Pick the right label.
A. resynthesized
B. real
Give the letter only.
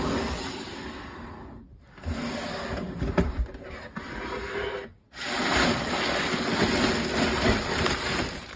B